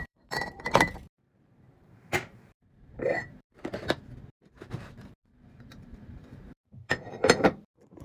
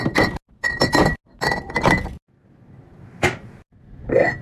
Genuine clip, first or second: second